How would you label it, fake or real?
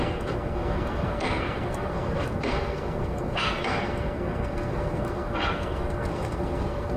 fake